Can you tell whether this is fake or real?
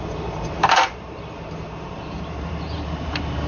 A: fake